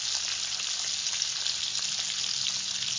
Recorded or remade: recorded